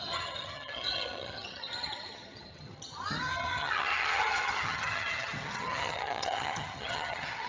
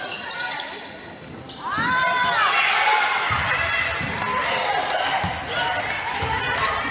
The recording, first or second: second